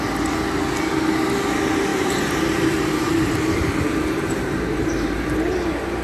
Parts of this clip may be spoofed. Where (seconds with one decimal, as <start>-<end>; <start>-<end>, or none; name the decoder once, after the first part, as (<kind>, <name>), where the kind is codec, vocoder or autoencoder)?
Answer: 1.9-5.3 (vocoder, BigVGAN v2)